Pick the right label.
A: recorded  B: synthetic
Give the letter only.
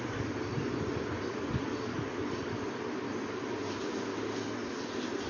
A